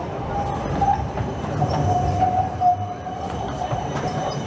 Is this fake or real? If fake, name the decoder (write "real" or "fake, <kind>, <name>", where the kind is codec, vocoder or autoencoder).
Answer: fake, vocoder, BigVGAN v2